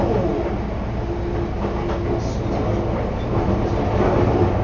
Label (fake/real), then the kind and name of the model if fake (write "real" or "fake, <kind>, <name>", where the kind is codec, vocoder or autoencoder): real